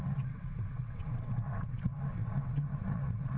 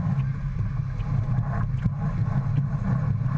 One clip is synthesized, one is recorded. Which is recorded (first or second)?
second